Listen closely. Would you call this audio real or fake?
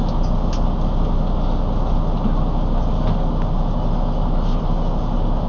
real